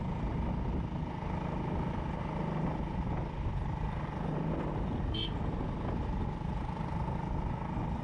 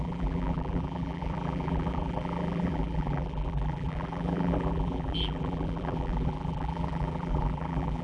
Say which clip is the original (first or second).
first